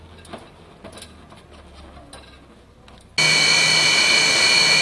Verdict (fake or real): real